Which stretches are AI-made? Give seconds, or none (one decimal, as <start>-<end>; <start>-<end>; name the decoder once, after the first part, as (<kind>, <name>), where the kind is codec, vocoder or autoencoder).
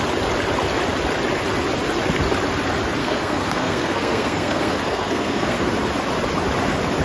3.0-5.7 (codec, SNAC)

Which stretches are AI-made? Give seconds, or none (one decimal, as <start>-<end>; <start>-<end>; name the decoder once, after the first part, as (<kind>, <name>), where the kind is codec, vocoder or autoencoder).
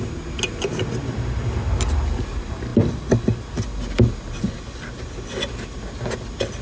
none